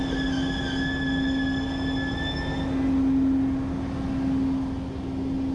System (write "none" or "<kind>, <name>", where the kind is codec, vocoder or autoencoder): none